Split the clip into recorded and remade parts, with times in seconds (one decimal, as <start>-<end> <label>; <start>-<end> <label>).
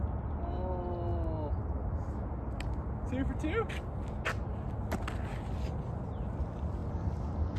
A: 0.0-7.6 recorded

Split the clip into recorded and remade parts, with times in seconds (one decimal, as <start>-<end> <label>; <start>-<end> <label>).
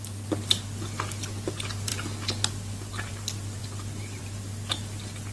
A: 0.0-3.6 recorded; 3.6-4.2 remade; 4.2-5.3 recorded